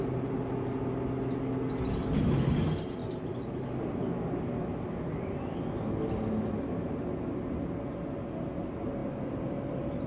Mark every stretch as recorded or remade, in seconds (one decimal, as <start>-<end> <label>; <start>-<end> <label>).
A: 0.0-3.0 recorded; 3.0-3.7 remade; 3.7-10.1 recorded